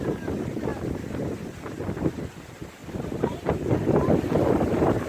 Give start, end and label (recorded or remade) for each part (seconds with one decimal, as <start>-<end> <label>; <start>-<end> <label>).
0.0-0.7 remade; 0.7-2.3 recorded; 2.3-2.8 remade; 2.8-4.5 recorded; 4.5-5.1 remade